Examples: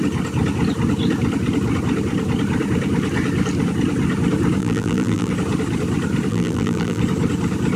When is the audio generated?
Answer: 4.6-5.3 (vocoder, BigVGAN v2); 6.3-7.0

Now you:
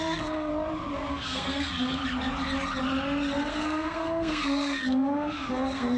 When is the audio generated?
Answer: 0.0-0.5 (codec, SNAC); 1.1-2.0; 3.5-6.0

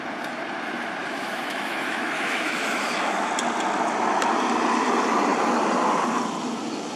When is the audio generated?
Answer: 1.0-3.3 (autoencoder, DAC-VAE)

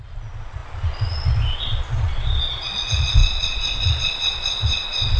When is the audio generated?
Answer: 0.0-5.2 (vocoder, Vocos)